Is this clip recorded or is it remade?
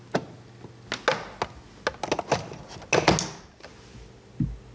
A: recorded